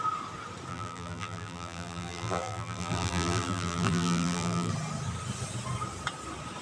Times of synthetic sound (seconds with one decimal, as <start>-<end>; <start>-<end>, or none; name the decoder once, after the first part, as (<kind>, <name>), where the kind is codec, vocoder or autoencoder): 0.7-4.7 (vocoder, BigVGAN v2)